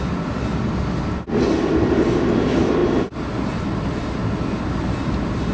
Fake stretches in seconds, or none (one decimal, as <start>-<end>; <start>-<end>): none